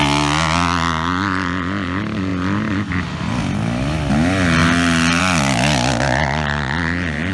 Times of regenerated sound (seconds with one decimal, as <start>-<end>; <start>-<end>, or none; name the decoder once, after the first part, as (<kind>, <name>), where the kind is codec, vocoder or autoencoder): none